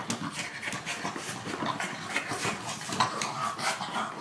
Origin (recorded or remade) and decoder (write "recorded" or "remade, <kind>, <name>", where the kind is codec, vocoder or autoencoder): recorded